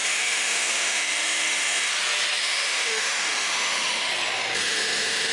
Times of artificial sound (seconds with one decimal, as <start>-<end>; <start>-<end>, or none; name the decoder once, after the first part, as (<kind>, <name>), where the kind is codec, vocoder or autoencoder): 0.0-1.9 (autoencoder, DAC-VAE); 2.4-4.1; 4.6-5.3